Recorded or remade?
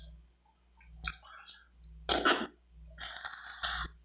recorded